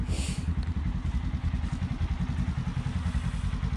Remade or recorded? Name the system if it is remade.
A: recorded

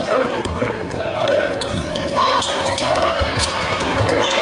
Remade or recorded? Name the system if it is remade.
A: remade, codec, SNAC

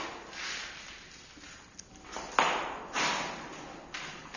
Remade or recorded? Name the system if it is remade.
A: recorded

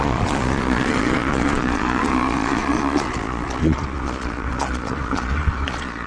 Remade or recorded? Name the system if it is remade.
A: remade, vocoder, Vocos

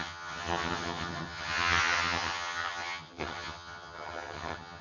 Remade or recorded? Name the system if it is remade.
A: remade, vocoder, HiFi-GAN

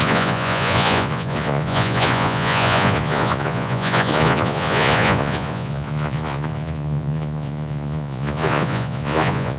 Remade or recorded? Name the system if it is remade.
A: remade, vocoder, Vocos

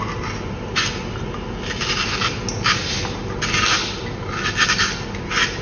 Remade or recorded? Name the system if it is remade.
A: recorded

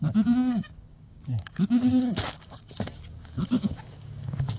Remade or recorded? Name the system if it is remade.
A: remade, codec, DAC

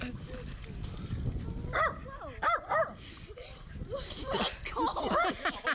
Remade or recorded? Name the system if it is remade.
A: recorded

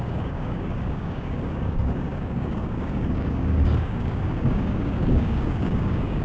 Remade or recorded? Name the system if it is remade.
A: remade, codec, DAC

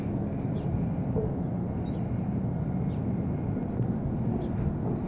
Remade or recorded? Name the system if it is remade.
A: recorded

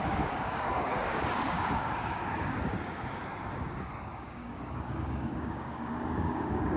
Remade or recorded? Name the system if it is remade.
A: remade, codec, DAC